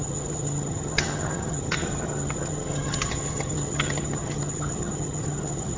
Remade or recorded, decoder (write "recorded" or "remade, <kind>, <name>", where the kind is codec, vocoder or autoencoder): remade, vocoder, HiFi-GAN